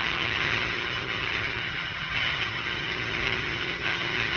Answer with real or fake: fake